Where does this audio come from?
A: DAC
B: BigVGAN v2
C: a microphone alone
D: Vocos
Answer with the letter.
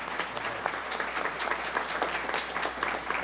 C